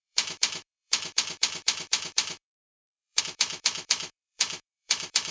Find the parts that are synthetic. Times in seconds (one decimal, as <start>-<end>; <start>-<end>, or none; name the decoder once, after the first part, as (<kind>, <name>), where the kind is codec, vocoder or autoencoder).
0.0-5.3 (autoencoder, DAC-VAE)